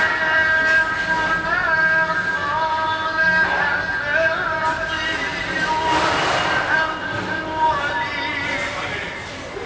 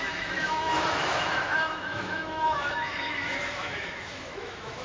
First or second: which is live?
first